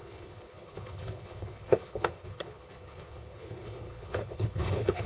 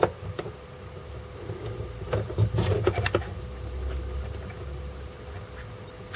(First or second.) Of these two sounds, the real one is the second